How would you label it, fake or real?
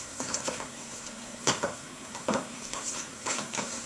fake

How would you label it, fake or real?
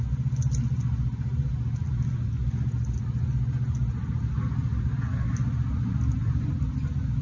real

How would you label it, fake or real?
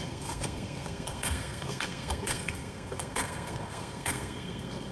fake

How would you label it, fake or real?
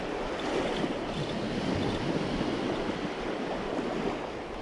real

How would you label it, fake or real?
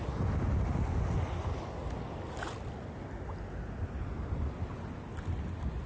real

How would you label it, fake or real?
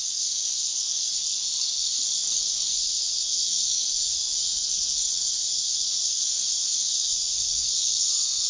fake